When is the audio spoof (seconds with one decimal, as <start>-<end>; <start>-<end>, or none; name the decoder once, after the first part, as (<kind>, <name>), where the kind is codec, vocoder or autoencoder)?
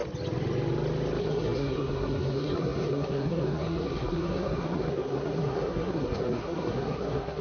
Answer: 1.2-7.4 (codec, SNAC)